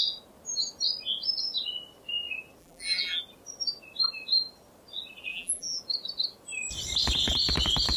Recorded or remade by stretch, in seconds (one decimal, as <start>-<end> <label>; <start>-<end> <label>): 0.0-2.6 recorded; 2.6-3.2 remade; 3.2-5.3 recorded; 5.3-5.8 remade; 5.8-8.0 recorded